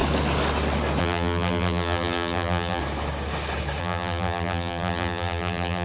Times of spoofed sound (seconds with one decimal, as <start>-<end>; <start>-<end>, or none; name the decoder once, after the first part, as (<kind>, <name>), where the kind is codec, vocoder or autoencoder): 1.0-2.8 (vocoder, BigVGAN v2); 3.8-5.8

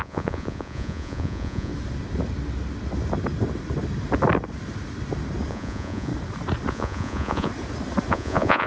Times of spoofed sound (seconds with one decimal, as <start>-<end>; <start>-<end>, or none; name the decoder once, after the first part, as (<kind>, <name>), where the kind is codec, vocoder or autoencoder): 0.0-1.7 (vocoder, Vocos); 5.5-6.1; 6.7-7.5; 8.1-8.7

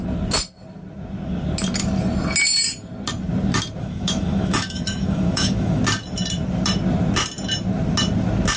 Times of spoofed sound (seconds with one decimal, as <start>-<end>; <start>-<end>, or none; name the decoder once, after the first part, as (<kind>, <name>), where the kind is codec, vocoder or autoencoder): 3.8-5.8 (autoencoder, DAC-VAE)

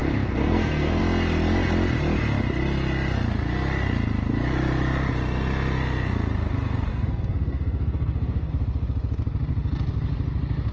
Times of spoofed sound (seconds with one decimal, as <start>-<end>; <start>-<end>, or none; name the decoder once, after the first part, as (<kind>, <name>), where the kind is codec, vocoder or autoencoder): 0.0-1.0 (codec, SNAC); 6.9-8.5

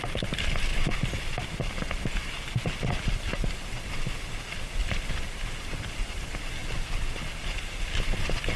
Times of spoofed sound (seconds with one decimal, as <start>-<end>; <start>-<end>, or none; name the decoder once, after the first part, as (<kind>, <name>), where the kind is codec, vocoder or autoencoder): none

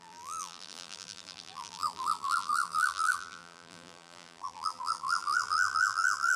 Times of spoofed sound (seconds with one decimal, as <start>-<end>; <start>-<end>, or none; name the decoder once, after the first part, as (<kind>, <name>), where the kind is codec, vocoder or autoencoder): 0.0-6.4 (vocoder, BigVGAN v2)

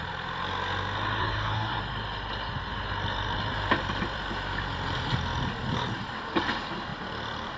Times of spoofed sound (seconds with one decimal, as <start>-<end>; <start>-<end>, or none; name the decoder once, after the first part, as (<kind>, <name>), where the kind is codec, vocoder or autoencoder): 1.2-1.8 (codec, SNAC)

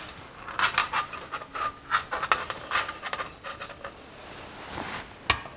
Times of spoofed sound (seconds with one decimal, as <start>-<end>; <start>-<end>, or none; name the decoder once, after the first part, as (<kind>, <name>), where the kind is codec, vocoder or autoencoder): 0.8-1.7 (vocoder, BigVGAN v2)